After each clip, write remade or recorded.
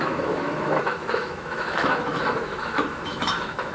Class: remade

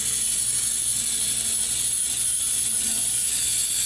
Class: recorded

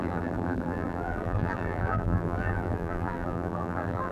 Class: remade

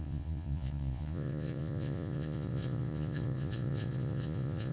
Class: remade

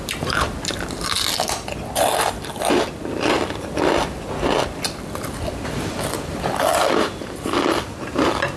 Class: remade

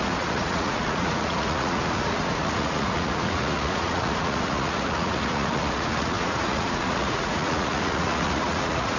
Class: remade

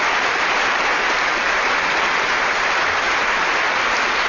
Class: recorded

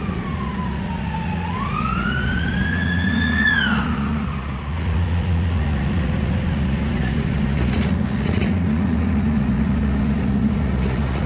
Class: remade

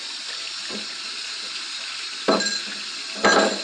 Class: recorded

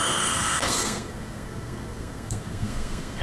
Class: remade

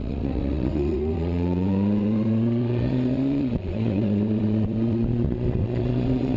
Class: remade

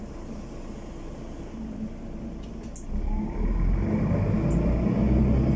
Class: recorded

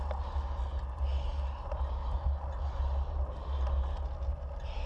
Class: recorded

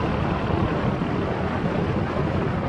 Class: recorded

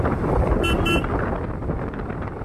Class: recorded